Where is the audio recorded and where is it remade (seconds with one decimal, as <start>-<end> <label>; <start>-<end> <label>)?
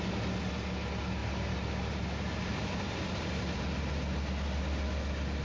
0.0-1.2 recorded; 1.2-3.6 remade; 3.6-5.4 recorded